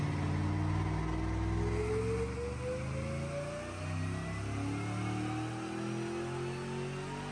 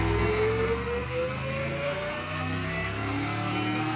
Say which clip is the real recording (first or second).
first